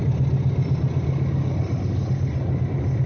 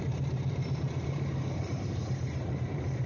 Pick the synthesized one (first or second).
second